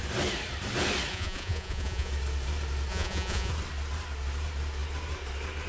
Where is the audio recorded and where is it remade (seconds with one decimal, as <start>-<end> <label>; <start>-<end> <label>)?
0.0-1.1 recorded; 1.1-2.1 remade; 2.1-2.9 recorded; 2.9-3.5 remade; 3.5-5.7 recorded